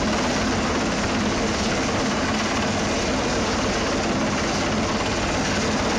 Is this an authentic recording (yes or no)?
yes